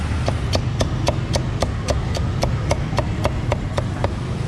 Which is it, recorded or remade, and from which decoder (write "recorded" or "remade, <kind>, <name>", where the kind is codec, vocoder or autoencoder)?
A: recorded